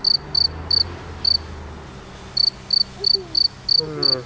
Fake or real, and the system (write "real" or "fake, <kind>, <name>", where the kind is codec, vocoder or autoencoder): real